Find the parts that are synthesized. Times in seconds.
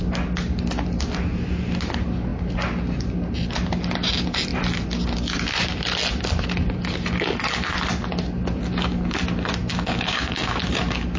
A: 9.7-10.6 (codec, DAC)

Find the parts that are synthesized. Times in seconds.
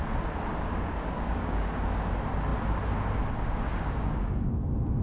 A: 0.5-2.1 (codec, DAC); 3.7-4.5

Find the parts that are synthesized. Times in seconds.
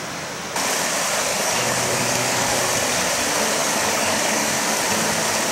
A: 1.3-2.6 (codec, DAC); 3.6-4.8